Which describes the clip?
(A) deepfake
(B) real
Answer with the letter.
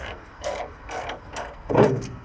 A